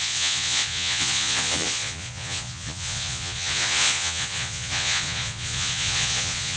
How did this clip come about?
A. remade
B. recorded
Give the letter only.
A